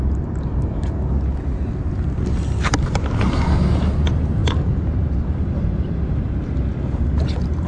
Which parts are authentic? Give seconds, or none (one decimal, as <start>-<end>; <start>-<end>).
0.0-7.7